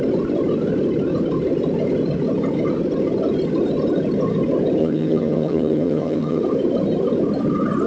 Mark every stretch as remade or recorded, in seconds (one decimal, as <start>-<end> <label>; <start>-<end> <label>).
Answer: 0.0-4.8 recorded; 4.8-6.4 remade; 6.4-7.9 recorded